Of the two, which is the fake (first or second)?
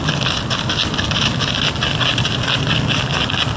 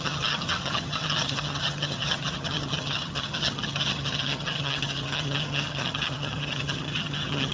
second